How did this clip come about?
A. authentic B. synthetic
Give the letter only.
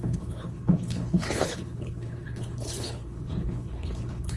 B